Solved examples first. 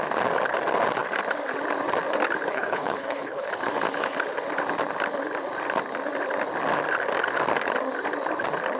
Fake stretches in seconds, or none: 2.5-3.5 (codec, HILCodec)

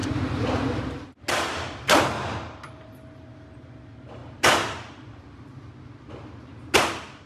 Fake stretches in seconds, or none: none

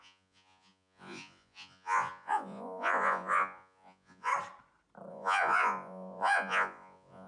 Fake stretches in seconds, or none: 0.0-4.3 (vocoder, Vocos); 5.1-7.3

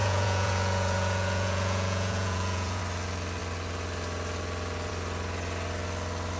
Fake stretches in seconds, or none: 0.0-2.8 (vocoder, Vocos)

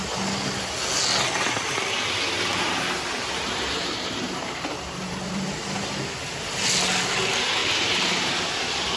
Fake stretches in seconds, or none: 2.5-5.6 (vocoder, BigVGAN v2); 7.6-8.3

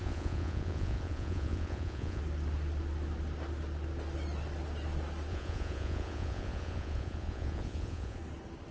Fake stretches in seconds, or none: 0.0-2.2 (vocoder, Vocos); 5.3-8.2